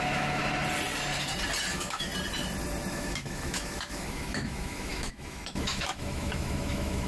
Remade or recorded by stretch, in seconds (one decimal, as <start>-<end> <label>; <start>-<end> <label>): 0.0-0.4 remade; 0.4-1.7 recorded; 1.7-2.1 remade; 2.1-2.9 recorded; 2.9-7.1 remade